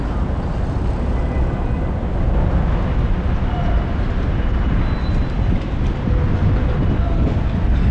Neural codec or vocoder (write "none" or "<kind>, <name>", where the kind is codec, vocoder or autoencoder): none